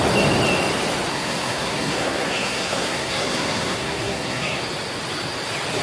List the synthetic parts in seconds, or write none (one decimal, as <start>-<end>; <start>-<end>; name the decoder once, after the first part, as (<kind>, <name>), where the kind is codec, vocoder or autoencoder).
1.1-4.6 (codec, SNAC)